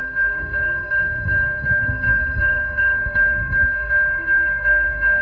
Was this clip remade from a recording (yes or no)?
yes